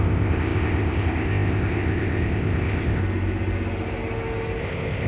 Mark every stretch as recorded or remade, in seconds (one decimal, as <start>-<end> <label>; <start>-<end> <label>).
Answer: 0.0-3.0 remade; 3.0-4.6 recorded; 4.6-5.1 remade